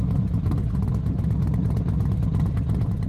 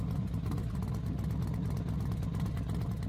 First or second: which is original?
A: second